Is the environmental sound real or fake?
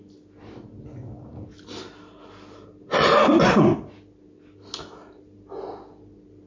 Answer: real